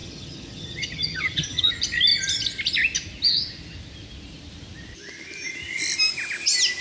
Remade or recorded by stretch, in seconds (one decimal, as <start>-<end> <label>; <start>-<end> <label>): 0.0-1.7 remade; 1.7-6.8 recorded